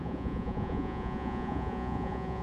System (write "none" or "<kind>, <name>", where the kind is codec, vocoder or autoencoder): vocoder, Vocos